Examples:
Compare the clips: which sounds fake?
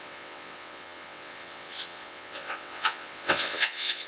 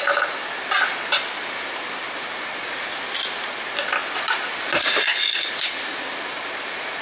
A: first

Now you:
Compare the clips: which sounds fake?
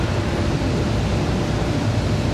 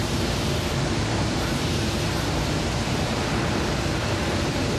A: second